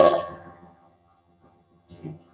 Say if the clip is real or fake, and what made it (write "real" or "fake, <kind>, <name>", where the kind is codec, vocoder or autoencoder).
fake, vocoder, HiFi-GAN